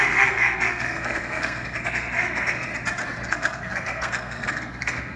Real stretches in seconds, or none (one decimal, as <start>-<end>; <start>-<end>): 2.7-3.3